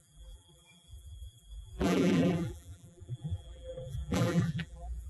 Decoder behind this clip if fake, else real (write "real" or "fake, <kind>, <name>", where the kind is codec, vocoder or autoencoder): fake, vocoder, BigVGAN v2